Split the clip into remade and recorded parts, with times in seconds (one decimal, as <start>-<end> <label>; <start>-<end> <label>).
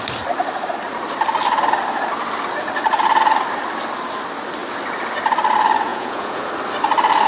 0.0-5.9 recorded; 5.9-6.5 remade; 6.5-7.3 recorded